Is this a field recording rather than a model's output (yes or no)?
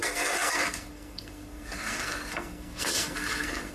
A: no